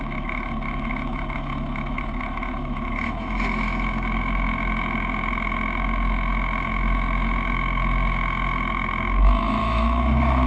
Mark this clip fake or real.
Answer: fake